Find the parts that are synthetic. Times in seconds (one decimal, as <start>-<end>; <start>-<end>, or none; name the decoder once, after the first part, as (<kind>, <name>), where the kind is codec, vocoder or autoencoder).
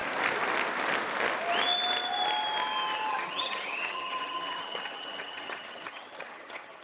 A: 3.1-6.8 (vocoder, HiFi-GAN)